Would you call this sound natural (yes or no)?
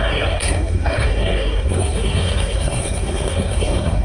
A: no